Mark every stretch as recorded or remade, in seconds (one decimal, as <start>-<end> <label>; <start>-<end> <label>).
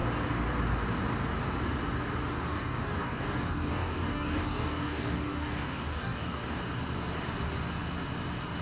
0.0-2.5 recorded; 2.5-6.6 remade; 6.6-8.6 recorded